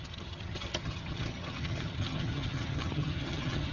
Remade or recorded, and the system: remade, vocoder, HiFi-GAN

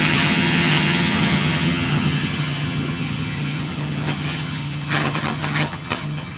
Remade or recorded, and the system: remade, vocoder, HiFi-GAN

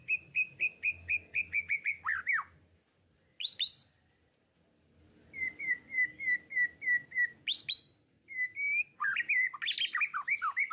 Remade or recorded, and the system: recorded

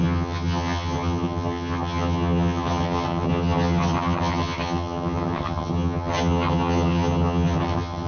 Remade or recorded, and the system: remade, vocoder, HiFi-GAN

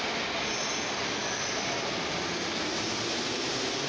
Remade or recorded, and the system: recorded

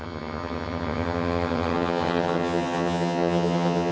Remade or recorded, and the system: remade, vocoder, HiFi-GAN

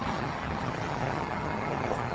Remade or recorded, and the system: remade, vocoder, HiFi-GAN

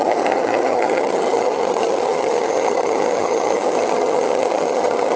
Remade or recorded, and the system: remade, vocoder, HiFi-GAN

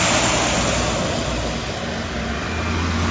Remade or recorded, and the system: recorded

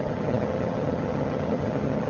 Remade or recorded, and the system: remade, vocoder, HiFi-GAN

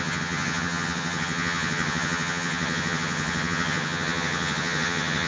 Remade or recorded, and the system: remade, vocoder, HiFi-GAN